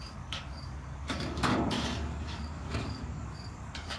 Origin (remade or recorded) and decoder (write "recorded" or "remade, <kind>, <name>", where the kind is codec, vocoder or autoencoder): remade, codec, DAC